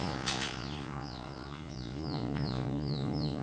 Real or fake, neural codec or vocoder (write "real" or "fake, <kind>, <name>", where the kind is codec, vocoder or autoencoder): fake, vocoder, Vocos